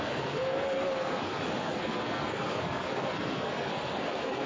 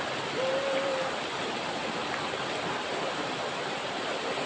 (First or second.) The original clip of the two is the second